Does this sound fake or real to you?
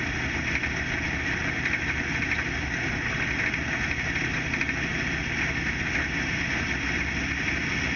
real